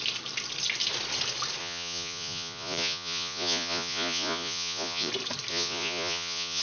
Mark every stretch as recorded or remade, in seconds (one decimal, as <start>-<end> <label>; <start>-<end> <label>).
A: 0.0-1.6 recorded; 1.6-5.1 remade; 5.1-5.5 recorded; 5.5-6.6 remade